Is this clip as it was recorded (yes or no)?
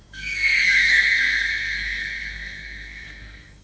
no